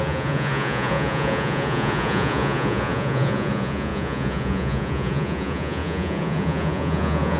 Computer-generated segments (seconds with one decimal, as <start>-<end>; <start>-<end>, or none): 0.0-7.4